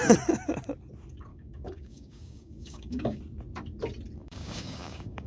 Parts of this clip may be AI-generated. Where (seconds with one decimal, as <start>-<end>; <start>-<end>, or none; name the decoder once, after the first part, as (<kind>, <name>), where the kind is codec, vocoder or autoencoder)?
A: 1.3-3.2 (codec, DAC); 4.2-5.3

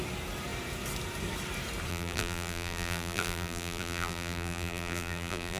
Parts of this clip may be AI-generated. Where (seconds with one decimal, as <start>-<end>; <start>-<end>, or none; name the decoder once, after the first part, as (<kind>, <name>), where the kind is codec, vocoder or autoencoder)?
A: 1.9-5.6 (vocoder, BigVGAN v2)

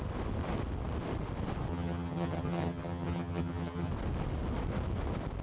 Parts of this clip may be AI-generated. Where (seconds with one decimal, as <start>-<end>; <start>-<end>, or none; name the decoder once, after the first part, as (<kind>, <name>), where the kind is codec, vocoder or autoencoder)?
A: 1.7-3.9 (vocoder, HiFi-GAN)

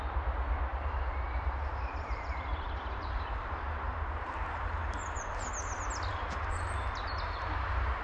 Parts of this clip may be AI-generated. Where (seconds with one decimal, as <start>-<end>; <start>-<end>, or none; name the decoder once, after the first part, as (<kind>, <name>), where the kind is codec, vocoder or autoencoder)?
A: 0.7-5.5 (vocoder, BigVGAN v2); 6.1-8.0